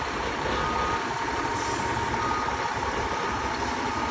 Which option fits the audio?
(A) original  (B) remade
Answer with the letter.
A